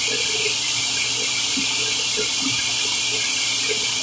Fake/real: real